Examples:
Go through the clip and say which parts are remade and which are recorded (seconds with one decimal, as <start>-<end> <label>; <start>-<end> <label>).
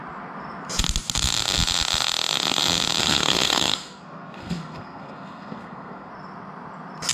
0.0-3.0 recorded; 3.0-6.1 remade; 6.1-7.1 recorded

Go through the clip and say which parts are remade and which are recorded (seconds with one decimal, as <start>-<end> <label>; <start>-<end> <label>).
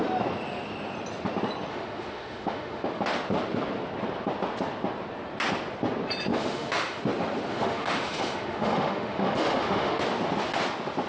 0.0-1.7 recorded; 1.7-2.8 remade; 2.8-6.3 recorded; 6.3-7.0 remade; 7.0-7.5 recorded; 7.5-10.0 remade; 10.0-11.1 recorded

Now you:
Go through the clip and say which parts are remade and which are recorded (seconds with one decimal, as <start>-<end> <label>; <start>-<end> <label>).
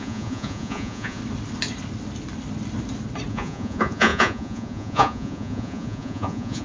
0.0-1.2 remade; 1.2-3.3 recorded; 3.3-6.6 remade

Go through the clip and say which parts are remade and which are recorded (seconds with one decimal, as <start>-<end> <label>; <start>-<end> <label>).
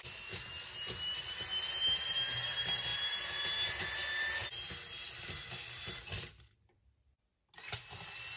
0.0-8.4 recorded